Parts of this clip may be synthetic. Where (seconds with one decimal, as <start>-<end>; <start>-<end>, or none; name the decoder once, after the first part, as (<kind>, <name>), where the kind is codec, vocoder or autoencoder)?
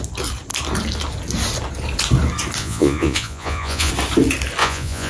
2.6-3.9 (vocoder, Vocos); 4.6-5.1